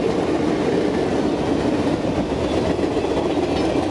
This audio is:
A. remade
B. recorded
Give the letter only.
B